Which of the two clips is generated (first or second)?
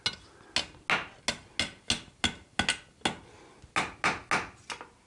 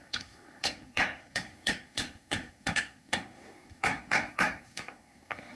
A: second